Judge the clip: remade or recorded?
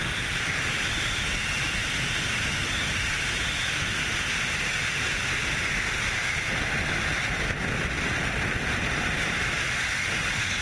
recorded